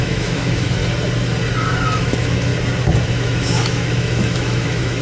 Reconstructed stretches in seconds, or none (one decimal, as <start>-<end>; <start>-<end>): 0.0-0.8; 2.0-2.5; 3.1-5.0